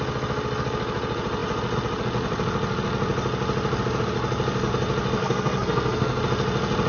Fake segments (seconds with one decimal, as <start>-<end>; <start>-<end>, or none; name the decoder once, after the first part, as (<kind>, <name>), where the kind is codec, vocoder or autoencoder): 5.2-6.2 (codec, SNAC)